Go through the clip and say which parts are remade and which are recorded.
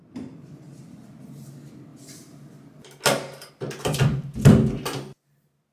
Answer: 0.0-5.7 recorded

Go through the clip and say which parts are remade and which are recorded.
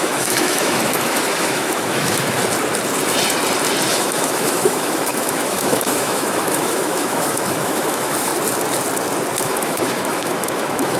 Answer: 0.0-2.4 remade; 2.4-3.9 recorded; 3.9-8.3 remade; 8.3-9.4 recorded; 9.4-11.0 remade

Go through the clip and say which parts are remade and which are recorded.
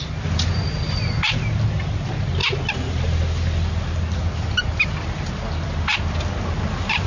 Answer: 0.0-7.1 recorded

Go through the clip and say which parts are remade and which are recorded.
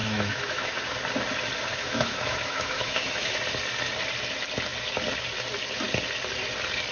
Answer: 0.0-0.7 remade; 0.7-1.7 recorded; 1.7-3.4 remade; 3.4-6.9 recorded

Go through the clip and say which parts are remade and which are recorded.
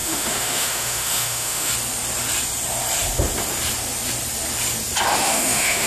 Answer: 0.0-1.7 remade; 1.7-5.1 recorded; 5.1-5.9 remade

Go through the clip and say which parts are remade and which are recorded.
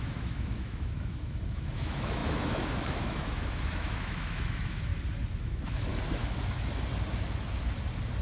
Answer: 0.0-4.9 remade; 4.9-5.4 recorded; 5.4-5.9 remade; 5.9-8.2 recorded